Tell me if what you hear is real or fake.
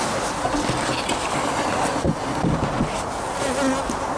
real